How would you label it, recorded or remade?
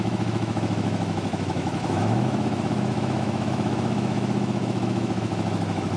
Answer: remade